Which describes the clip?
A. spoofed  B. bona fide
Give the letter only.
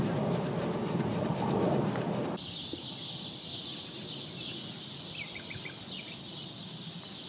B